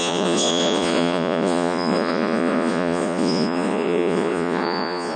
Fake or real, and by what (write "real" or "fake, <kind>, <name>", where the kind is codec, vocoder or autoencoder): fake, vocoder, Vocos